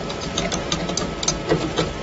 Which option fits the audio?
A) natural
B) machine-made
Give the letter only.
A